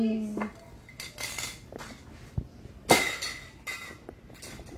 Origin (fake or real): real